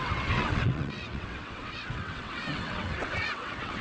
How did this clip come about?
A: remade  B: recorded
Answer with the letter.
A